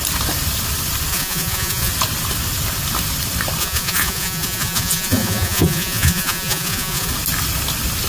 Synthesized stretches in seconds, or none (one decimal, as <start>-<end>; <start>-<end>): 1.1-1.9; 3.6-7.1